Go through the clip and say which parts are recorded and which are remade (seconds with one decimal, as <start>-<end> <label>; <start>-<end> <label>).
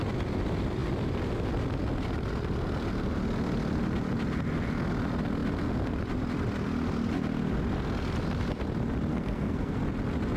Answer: 0.0-9.1 recorded; 9.1-9.8 remade; 9.8-10.4 recorded